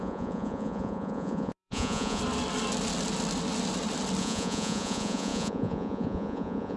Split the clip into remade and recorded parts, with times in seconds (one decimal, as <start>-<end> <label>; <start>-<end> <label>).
0.0-2.2 remade; 2.2-4.2 recorded; 4.2-6.8 remade